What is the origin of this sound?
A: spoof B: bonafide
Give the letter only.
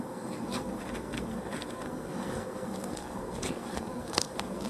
A